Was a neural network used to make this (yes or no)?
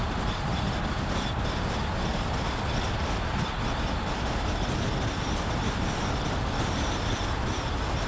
no